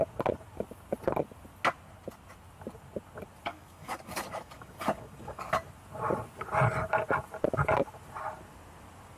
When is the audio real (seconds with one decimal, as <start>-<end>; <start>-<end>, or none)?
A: 0.0-3.5; 5.5-9.2

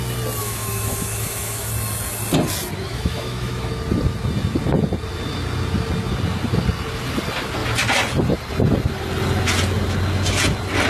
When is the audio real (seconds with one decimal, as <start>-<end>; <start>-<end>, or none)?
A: 0.0-0.4; 1.7-2.8; 3.7-10.9